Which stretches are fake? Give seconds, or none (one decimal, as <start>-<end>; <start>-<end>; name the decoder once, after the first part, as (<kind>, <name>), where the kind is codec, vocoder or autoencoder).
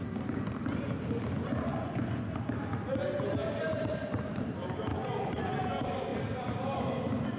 1.7-2.4 (vocoder, Vocos); 4.9-5.6